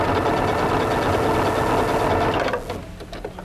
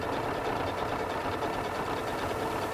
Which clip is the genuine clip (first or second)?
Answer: first